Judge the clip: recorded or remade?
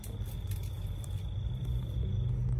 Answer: recorded